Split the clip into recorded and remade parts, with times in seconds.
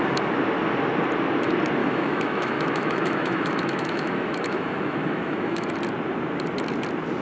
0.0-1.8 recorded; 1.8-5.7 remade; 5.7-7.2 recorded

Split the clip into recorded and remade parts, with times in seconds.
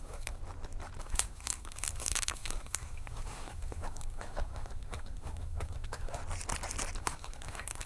0.0-0.4 remade; 0.4-1.0 recorded; 1.0-6.2 remade; 6.2-7.0 recorded; 7.0-7.9 remade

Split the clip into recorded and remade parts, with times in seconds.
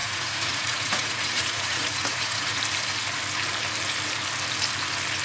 0.0-2.6 remade; 2.6-5.2 recorded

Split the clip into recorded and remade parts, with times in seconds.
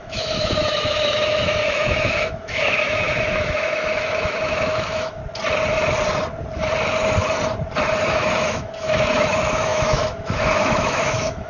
0.0-5.2 remade; 5.2-8.1 recorded; 8.1-11.5 remade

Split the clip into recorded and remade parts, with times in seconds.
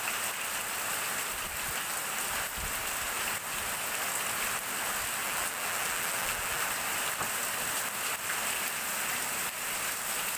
0.0-5.2 recorded; 5.2-6.6 remade; 6.6-10.4 recorded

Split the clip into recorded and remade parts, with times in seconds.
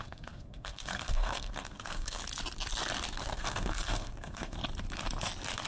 0.0-2.2 remade; 2.2-3.2 recorded; 3.2-4.6 remade; 4.6-5.7 recorded